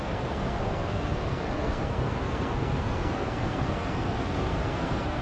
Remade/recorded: remade